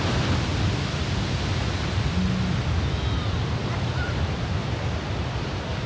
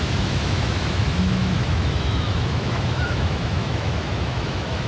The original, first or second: first